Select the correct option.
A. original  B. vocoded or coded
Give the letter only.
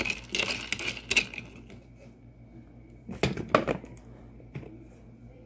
A